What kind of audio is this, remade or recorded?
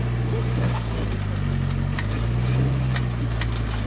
recorded